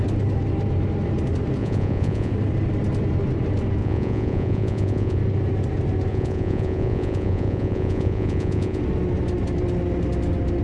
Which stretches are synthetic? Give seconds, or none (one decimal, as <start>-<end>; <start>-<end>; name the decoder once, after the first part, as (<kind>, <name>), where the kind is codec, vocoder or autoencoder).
1.6-2.3 (vocoder, Vocos); 3.8-5.2; 6.1-8.8